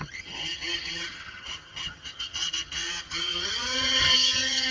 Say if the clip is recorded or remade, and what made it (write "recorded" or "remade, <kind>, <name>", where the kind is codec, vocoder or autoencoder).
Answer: remade, vocoder, HiFi-GAN